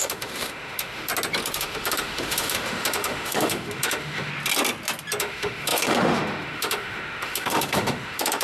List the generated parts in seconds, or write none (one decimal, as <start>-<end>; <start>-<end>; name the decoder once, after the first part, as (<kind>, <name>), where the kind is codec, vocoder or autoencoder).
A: 0.0-1.1 (autoencoder, DAC-VAE); 1.6-4.3; 5.2-8.4